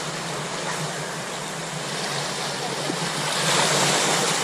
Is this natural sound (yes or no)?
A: yes